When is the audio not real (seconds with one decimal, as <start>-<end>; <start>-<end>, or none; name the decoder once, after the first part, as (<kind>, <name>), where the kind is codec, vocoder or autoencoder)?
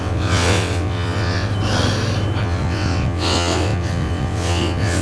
0.0-1.5 (vocoder, WaveNeXt); 2.4-5.0